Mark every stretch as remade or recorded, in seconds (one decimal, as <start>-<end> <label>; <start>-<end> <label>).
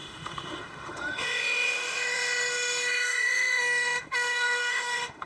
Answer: 0.0-5.3 remade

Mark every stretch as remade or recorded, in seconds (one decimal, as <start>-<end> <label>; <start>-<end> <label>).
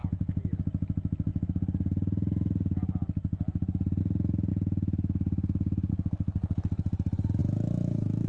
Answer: 0.0-0.6 remade; 0.6-4.5 recorded; 4.5-5.9 remade; 5.9-7.4 recorded; 7.4-8.3 remade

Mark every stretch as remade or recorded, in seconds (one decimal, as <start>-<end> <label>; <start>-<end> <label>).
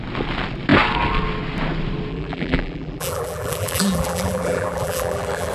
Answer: 0.0-2.1 recorded; 2.1-5.5 remade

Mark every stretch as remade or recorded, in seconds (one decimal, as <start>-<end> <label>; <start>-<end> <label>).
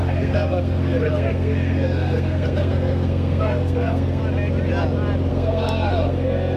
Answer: 0.0-4.2 remade; 4.2-5.3 recorded; 5.3-6.6 remade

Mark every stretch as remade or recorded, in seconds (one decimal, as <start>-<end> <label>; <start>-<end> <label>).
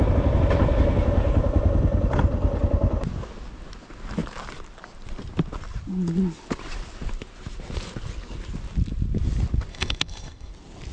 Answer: 0.0-9.7 recorded; 9.7-10.5 remade; 10.5-10.9 recorded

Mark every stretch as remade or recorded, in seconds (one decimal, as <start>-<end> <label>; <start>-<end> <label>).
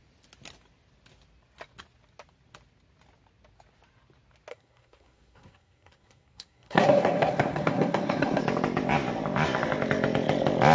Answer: 0.0-4.5 recorded; 4.5-8.4 remade; 8.4-10.7 recorded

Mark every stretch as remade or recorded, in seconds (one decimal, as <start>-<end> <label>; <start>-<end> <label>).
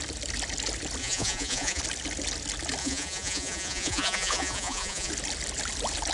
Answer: 0.0-1.0 recorded; 1.0-1.8 remade; 1.8-2.8 recorded; 2.8-5.1 remade; 5.1-6.1 recorded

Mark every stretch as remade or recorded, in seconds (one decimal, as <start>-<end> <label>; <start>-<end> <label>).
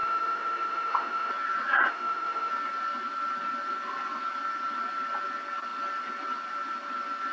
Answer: 0.0-1.3 remade; 1.3-1.9 recorded; 1.9-2.5 remade; 2.5-7.3 recorded